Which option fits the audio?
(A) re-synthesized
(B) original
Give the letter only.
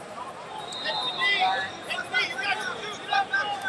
A